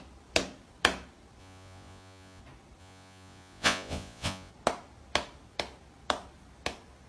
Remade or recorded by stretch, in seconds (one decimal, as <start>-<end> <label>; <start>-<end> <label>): 0.0-1.4 recorded; 1.4-2.4 remade; 2.4-2.8 recorded; 2.8-4.5 remade; 4.5-7.1 recorded